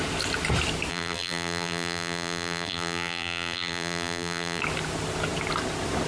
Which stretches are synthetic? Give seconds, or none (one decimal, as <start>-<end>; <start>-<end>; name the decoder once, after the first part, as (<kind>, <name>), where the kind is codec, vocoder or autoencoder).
0.9-4.6 (vocoder, BigVGAN v2)